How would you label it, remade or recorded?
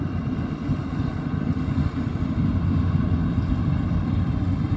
recorded